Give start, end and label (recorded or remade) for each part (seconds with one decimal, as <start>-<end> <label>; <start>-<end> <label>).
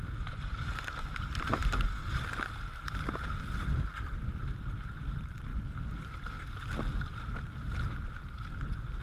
0.0-9.0 recorded